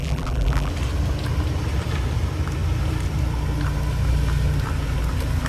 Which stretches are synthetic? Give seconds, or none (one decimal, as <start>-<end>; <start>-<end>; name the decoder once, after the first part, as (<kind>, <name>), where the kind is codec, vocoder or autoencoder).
0.0-0.7 (vocoder, BigVGAN v2)